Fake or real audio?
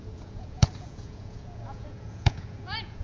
fake